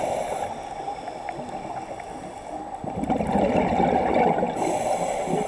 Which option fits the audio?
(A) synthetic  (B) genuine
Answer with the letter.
B